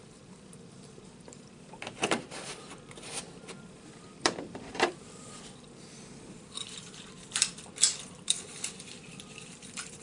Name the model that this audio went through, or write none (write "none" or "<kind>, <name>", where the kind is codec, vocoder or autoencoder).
vocoder, BigVGAN v2